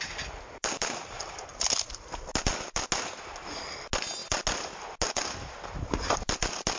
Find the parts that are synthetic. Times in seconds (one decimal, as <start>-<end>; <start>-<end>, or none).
none